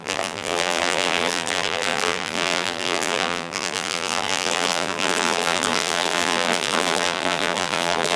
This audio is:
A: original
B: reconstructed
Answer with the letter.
B